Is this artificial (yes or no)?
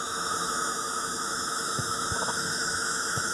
yes